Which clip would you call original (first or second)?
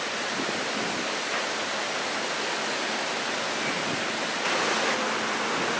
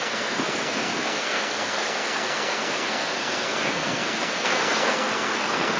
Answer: first